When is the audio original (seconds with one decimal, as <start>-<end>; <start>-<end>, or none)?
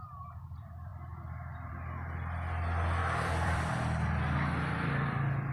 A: 0.0-3.0; 3.7-5.5